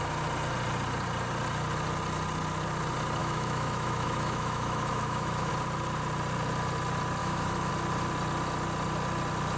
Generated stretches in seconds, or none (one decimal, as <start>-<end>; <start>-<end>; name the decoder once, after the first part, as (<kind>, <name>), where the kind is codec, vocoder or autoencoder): 3.2-5.5 (autoencoder, DAC-VAE); 7.2-7.7